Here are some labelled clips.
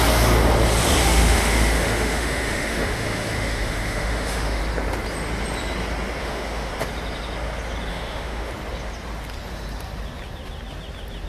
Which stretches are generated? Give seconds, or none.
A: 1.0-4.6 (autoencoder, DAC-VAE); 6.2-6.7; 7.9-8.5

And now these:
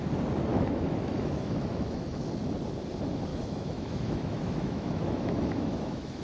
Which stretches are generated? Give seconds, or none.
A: 0.5-2.2 (autoencoder, DAC-VAE); 3.3-6.2

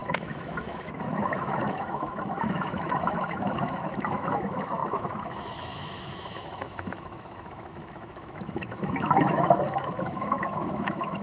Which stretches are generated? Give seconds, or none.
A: 0.0-11.2 (autoencoder, DAC-VAE)

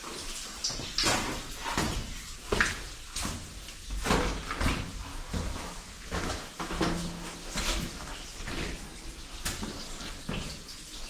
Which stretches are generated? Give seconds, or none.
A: 4.9-8.1 (autoencoder, DAC-VAE)

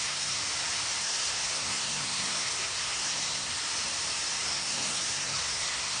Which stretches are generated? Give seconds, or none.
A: 0.0-0.4 (codec, SNAC); 1.0-3.5; 4.3-6.0

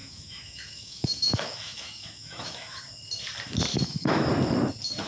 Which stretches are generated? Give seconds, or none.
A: 0.0-2.8 (autoencoder, DAC-VAE); 3.7-4.3

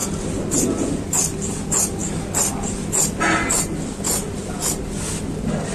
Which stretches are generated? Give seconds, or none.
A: none